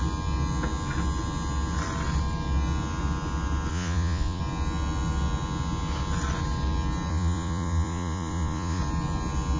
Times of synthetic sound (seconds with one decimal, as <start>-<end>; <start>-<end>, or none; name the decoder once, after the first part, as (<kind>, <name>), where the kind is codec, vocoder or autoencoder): 3.7-4.4 (vocoder, Vocos); 7.1-8.8